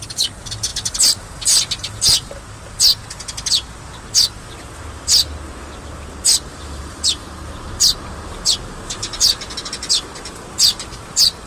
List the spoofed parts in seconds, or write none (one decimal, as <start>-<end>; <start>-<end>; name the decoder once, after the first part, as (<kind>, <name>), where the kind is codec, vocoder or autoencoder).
6.5-7.0 (vocoder, BigVGAN v2)